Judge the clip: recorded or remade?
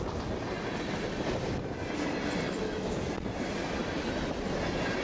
recorded